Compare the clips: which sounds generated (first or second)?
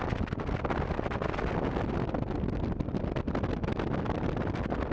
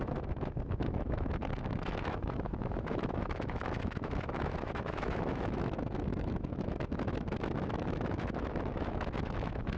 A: second